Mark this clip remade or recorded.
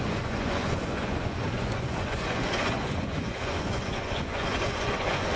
remade